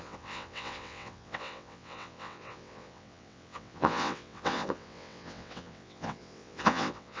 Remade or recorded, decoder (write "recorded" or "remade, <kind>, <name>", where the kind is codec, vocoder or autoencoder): remade, vocoder, WaveNeXt